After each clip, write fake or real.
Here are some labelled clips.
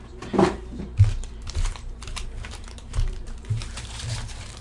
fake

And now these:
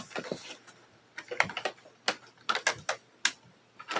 real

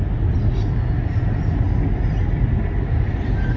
real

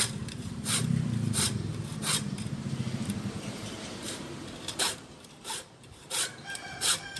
fake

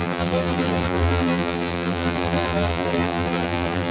fake